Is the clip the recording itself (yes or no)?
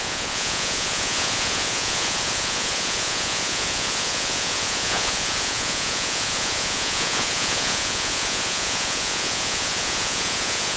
no